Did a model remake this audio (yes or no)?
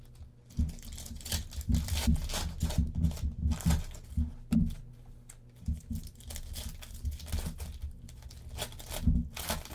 no